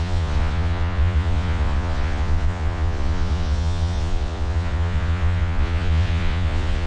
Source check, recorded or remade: remade